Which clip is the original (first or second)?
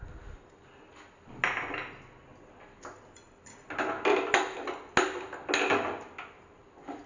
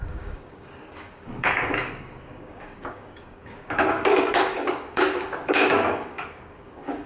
first